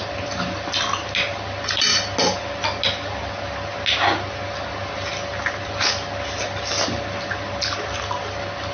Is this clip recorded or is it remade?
recorded